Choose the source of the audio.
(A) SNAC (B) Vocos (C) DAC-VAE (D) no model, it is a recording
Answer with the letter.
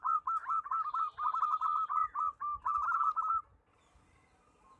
D